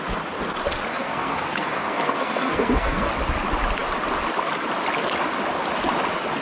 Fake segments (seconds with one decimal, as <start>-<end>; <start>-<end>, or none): 0.9-3.1